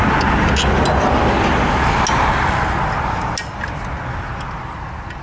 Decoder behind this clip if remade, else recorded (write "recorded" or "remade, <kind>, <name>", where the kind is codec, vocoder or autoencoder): recorded